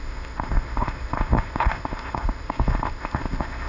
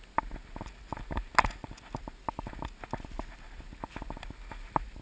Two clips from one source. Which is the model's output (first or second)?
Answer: first